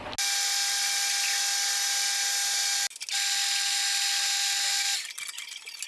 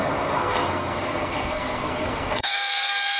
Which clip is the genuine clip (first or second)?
first